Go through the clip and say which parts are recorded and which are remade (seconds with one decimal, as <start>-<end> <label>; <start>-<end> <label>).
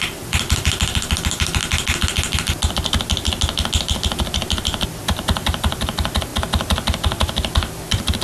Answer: 0.0-1.6 remade; 1.6-4.9 recorded; 4.9-6.3 remade; 6.3-7.7 recorded; 7.7-8.2 remade